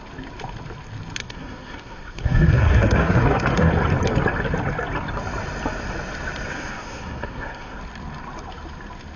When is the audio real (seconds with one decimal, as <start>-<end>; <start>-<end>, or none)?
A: 0.0-1.2; 3.7-6.5; 7.8-9.2